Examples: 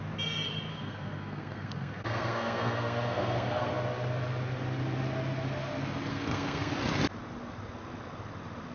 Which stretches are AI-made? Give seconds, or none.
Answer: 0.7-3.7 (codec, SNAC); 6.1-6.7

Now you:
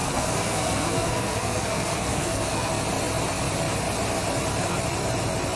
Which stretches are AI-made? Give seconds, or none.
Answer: 0.0-2.7 (codec, SNAC)

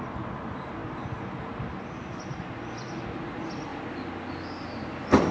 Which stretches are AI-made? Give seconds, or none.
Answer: none

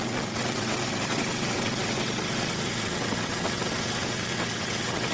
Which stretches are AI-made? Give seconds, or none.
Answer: 0.0-5.1 (vocoder, WaveNeXt)

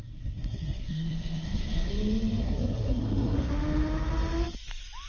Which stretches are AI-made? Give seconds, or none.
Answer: 0.0-1.9 (codec, SNAC); 2.4-3.5

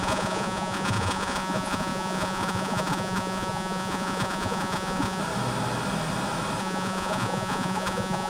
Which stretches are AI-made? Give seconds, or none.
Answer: 0.0-5.2 (vocoder, Vocos); 6.6-8.3

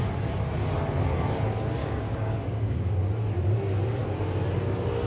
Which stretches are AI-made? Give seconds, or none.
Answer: 1.8-3.0 (codec, DAC)

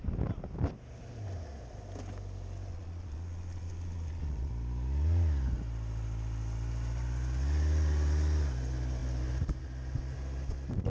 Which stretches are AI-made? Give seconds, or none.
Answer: 2.7-4.5 (vocoder, Vocos)